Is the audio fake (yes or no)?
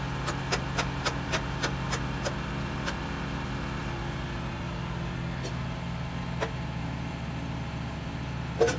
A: no